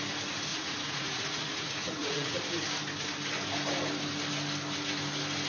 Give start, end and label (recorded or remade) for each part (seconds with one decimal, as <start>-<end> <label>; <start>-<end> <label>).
0.0-0.5 recorded; 0.5-2.4 remade; 2.4-5.5 recorded